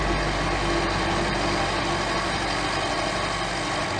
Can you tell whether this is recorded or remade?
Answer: recorded